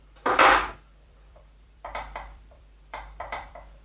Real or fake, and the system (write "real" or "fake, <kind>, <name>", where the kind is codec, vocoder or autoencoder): fake, vocoder, BigVGAN v2